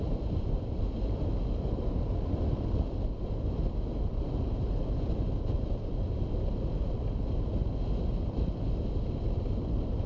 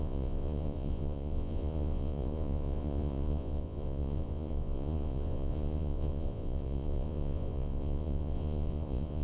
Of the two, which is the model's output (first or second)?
second